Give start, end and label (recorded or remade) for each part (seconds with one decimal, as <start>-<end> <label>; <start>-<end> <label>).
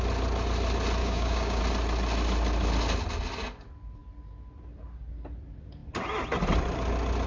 0.0-1.0 recorded; 1.0-1.6 remade; 1.6-7.3 recorded